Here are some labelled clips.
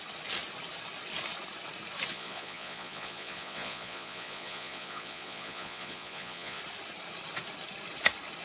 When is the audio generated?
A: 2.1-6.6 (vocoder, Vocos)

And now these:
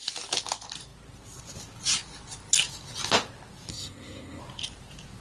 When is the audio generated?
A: 3.7-4.4 (codec, SNAC)

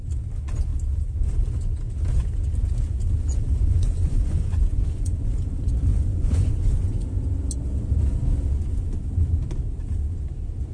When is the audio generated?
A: 3.2-5.3 (vocoder, Vocos); 5.9-7.2

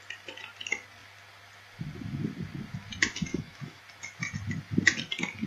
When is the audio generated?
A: 3.3-3.8 (autoencoder, DAC-VAE)

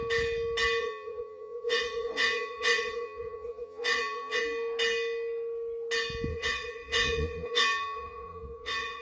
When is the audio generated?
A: 0.8-4.4 (vocoder, Vocos); 6.3-9.0

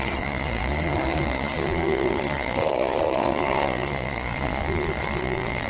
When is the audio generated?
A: 0.0-5.7 (vocoder, Vocos)

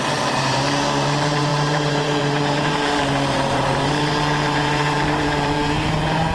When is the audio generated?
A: 0.0-6.3 (vocoder, BigVGAN v2)